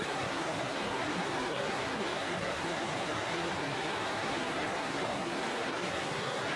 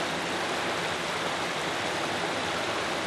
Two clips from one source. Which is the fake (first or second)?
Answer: first